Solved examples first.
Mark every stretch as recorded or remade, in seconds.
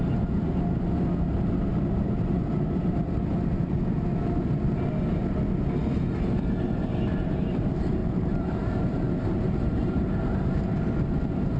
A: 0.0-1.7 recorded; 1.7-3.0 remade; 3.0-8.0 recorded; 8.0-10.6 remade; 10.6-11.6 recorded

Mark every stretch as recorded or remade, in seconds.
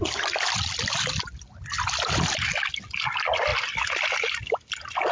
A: 0.0-5.1 recorded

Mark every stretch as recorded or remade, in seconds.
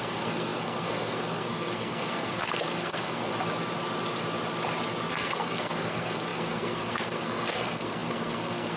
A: 0.0-3.3 remade; 3.3-5.1 recorded; 5.1-8.8 remade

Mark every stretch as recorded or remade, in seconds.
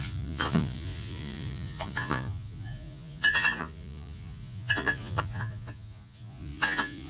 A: 0.0-7.1 remade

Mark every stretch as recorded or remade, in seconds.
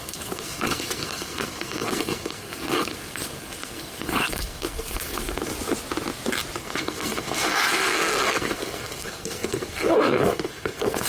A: 0.0-5.5 remade; 5.5-6.6 recorded; 6.6-11.1 remade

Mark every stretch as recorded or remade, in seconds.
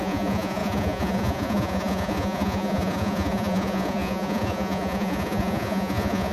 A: 0.0-6.3 remade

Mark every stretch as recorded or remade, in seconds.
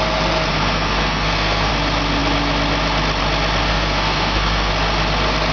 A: 0.0-0.5 recorded; 0.5-1.7 remade; 1.7-3.7 recorded; 3.7-4.7 remade; 4.7-5.5 recorded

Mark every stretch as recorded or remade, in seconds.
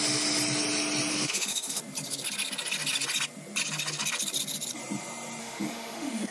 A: 0.0-1.1 recorded; 1.1-1.8 remade; 1.8-5.4 recorded; 5.4-6.3 remade